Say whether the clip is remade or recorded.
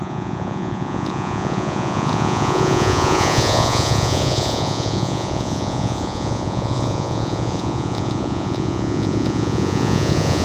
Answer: remade